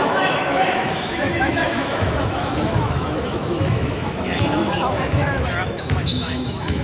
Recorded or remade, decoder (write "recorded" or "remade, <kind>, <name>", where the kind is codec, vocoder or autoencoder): remade, autoencoder, DAC-VAE